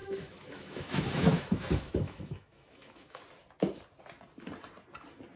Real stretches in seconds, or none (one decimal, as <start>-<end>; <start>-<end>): 3.2-5.4

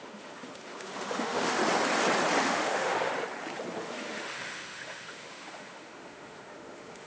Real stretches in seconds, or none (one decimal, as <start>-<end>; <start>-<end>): 1.6-2.4; 3.1-3.8

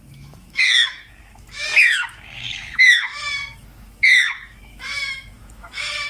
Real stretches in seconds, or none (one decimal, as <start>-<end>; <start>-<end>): none

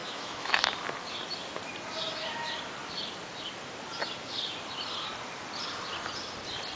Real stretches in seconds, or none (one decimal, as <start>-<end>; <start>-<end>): 0.7-6.8

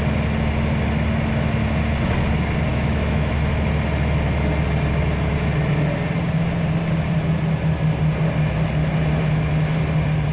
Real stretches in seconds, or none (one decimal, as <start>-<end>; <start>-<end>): 0.0-2.7; 3.3-10.3

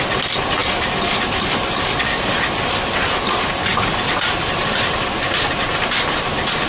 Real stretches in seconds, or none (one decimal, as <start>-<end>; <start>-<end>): 0.0-6.7

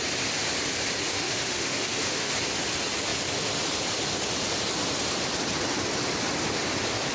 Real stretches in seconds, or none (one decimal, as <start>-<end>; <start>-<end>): 0.0-1.1; 2.3-7.1